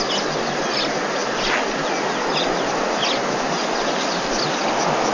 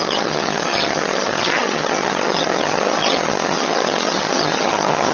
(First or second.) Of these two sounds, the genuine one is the first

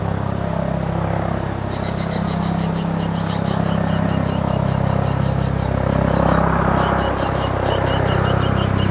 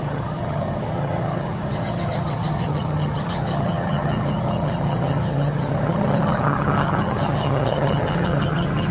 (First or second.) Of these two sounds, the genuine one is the first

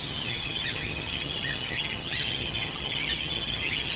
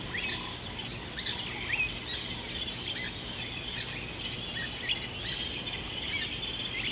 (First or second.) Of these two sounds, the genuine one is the second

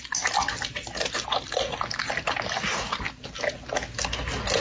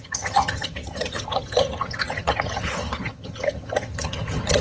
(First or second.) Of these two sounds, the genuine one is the first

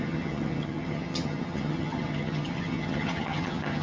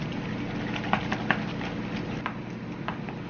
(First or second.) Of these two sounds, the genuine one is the second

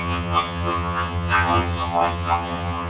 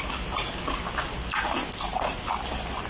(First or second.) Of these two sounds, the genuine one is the second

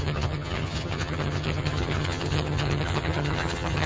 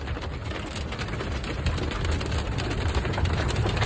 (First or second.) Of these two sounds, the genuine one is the second